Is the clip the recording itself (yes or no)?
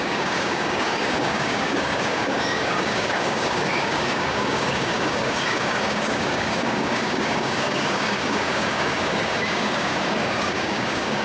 no